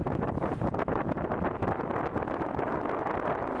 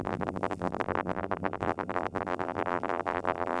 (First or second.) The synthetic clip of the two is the second